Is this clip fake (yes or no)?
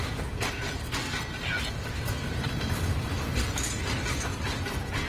no